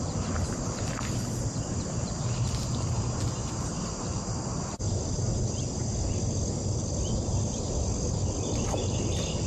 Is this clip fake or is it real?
real